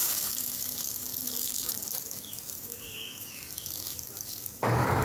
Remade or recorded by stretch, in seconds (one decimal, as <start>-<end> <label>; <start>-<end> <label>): 0.0-5.0 remade